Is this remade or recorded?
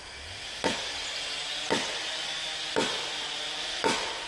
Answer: recorded